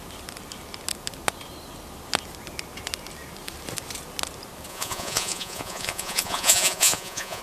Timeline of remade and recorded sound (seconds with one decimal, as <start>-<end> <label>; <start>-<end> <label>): 0.0-4.7 recorded; 4.7-7.4 remade